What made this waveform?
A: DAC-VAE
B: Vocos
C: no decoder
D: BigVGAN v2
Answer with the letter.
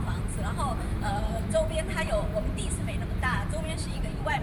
D